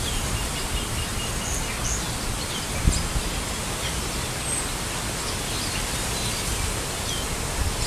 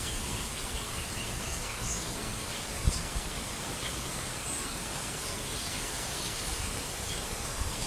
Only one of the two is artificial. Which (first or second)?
second